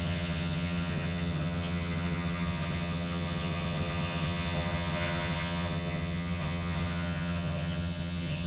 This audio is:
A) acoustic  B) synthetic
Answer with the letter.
B